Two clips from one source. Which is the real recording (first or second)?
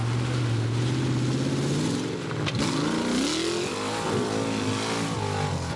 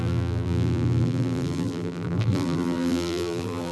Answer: first